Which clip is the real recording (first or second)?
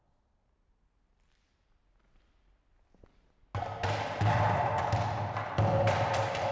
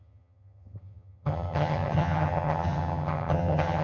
first